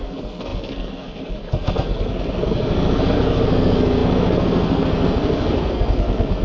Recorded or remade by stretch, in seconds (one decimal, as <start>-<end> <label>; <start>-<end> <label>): 0.0-6.4 remade